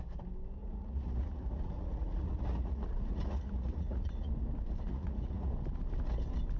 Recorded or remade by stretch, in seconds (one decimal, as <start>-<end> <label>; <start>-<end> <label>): 0.0-0.6 recorded; 0.6-4.3 remade; 4.3-4.9 recorded; 4.9-5.5 remade; 5.5-6.6 recorded